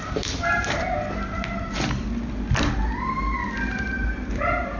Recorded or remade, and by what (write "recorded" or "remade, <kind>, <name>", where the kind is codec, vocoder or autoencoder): recorded